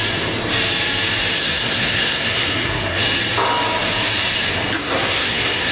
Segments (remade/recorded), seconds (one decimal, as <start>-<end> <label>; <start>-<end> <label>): 0.0-1.4 recorded; 1.4-3.0 remade; 3.0-4.8 recorded; 4.8-5.7 remade